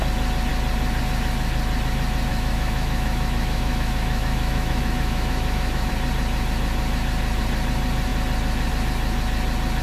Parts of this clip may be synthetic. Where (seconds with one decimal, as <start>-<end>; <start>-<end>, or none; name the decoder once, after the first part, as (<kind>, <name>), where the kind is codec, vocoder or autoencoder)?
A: 2.3-5.9 (autoencoder, DAC-VAE)